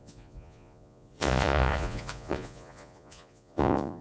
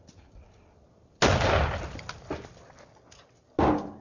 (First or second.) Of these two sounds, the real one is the second